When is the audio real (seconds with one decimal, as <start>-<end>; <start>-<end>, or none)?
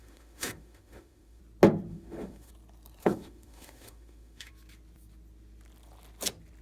1.4-1.9; 2.5-3.0; 4.5-6.6